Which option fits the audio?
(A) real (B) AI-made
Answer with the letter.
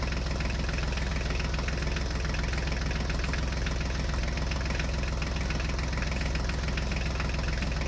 A